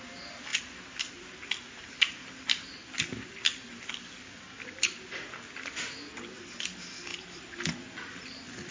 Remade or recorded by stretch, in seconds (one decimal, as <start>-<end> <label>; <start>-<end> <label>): 0.0-8.7 recorded